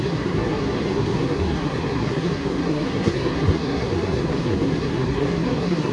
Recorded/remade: remade